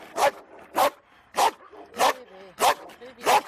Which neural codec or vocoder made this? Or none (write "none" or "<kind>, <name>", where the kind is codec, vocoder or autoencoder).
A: none